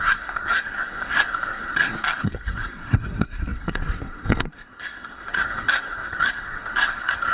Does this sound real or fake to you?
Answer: fake